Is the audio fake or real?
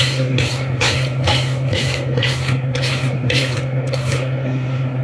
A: fake